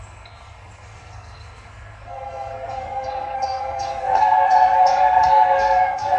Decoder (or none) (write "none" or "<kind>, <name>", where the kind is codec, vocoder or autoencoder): codec, SNAC